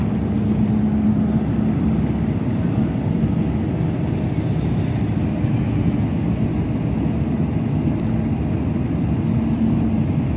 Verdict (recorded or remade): recorded